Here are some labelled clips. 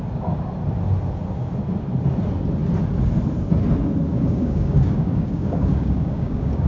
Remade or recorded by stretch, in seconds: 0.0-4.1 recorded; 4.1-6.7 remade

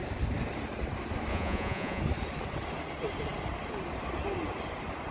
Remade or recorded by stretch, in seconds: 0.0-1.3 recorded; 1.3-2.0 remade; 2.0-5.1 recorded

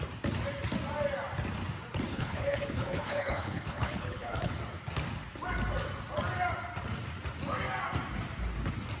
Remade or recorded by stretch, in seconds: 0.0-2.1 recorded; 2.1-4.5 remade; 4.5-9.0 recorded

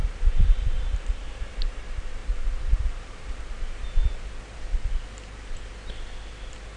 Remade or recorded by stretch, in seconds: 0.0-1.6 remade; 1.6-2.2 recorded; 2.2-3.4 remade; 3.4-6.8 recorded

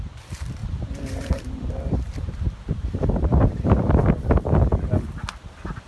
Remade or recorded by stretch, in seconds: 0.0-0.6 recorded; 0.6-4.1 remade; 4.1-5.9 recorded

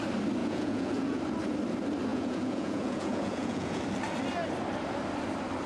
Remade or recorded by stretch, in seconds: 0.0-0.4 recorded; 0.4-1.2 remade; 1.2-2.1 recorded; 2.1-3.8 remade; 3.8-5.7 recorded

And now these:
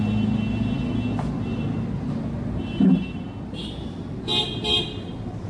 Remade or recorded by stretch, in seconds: 0.0-5.5 recorded

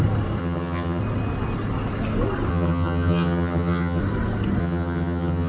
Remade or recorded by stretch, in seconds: 0.0-0.4 recorded; 0.4-1.0 remade; 1.0-2.5 recorded; 2.5-4.0 remade; 4.0-4.6 recorded; 4.6-5.5 remade